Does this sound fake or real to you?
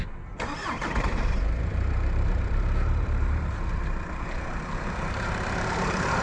fake